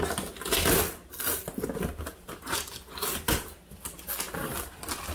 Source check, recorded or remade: recorded